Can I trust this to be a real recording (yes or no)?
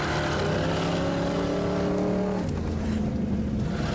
yes